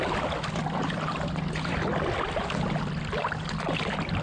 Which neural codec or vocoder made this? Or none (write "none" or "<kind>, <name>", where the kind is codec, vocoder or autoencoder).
none